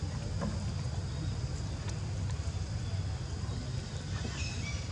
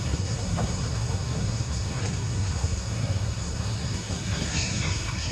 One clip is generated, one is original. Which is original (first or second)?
first